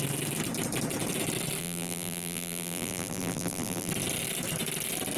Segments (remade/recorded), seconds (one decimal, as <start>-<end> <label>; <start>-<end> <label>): 0.0-1.6 recorded; 1.6-3.9 remade; 3.9-5.2 recorded